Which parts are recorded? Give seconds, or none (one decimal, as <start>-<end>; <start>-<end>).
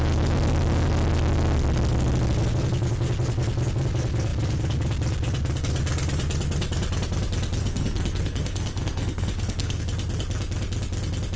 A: 0.0-7.6; 9.8-11.4